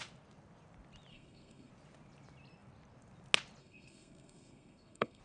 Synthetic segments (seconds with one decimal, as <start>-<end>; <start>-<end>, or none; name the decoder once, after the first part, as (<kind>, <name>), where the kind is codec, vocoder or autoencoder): 1.1-1.7 (codec, SNAC); 3.6-5.2